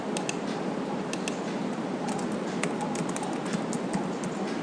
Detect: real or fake real